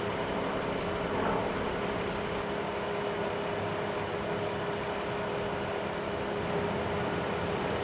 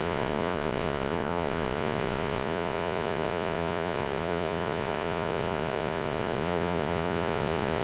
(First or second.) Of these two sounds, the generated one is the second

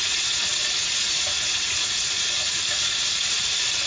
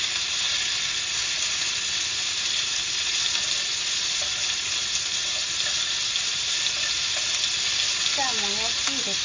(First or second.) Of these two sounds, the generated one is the first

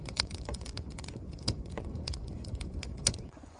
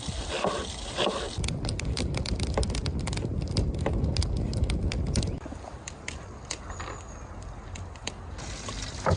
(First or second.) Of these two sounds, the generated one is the first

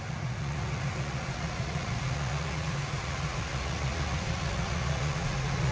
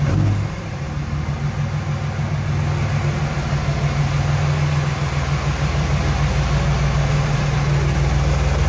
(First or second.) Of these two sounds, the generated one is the first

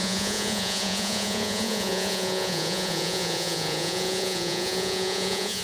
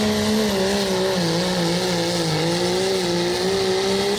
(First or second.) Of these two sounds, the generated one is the first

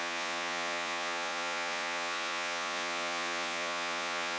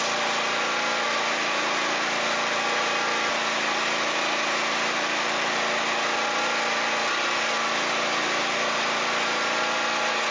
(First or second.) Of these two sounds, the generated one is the first